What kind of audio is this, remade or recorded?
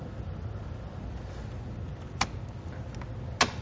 recorded